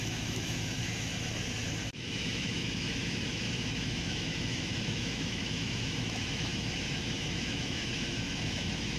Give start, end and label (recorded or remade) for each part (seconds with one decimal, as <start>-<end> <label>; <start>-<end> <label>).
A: 0.0-1.1 remade; 1.1-1.9 recorded; 1.9-9.0 remade